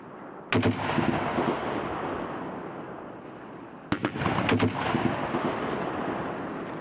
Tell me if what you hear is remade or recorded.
recorded